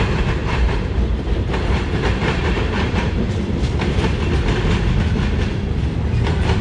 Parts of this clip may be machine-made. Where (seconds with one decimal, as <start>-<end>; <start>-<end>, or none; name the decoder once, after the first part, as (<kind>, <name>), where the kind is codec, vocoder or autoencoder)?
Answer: 0.4-3.6 (vocoder, BigVGAN v2)